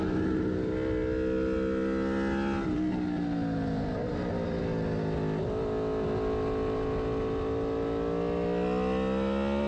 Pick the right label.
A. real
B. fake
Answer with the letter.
A